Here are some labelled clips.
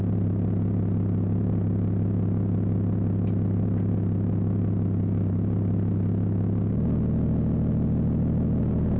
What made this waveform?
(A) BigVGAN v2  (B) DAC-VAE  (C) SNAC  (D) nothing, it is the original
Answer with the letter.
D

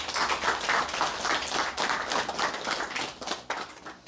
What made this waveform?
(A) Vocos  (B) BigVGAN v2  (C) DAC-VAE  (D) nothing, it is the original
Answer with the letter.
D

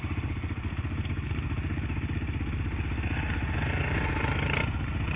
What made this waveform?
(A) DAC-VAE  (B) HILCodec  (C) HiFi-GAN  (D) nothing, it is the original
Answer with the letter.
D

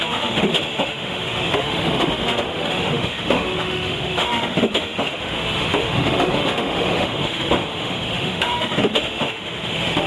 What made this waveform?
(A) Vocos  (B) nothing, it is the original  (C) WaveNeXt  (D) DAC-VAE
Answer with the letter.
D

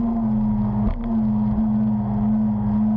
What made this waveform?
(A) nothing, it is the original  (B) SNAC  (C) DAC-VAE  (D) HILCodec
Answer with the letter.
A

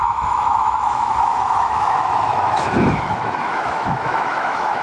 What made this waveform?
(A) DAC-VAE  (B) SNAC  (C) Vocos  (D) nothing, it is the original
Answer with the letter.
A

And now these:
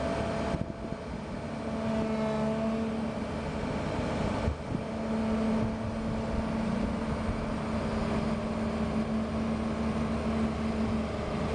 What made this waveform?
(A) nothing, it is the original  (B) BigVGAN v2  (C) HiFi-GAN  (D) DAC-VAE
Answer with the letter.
A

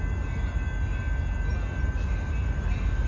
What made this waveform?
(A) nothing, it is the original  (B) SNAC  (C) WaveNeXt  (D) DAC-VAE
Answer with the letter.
A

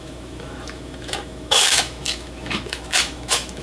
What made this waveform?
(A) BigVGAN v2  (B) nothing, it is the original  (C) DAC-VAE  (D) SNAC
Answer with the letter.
C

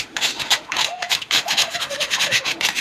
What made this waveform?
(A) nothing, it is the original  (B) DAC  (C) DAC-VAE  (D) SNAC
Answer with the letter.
C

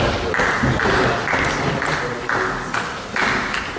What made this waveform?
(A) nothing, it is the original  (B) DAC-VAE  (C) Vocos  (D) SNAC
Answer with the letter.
A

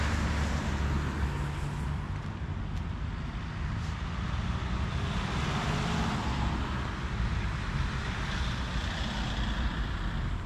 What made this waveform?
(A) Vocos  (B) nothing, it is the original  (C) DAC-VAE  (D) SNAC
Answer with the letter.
B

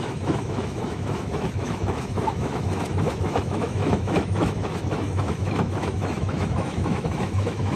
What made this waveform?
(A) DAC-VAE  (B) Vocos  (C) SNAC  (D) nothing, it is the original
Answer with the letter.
A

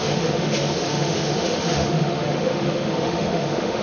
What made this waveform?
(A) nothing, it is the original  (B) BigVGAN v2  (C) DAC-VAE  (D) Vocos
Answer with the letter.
C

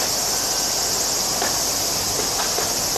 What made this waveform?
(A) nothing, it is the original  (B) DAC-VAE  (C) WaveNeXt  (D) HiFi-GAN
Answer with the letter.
A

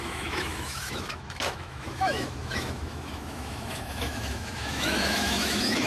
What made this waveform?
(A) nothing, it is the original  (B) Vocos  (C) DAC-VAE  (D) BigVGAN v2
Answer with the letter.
C